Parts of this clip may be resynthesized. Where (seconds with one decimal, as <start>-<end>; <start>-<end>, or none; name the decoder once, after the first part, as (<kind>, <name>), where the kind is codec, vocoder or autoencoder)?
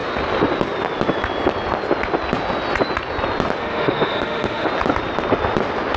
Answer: 3.6-4.7 (autoencoder, DAC-VAE)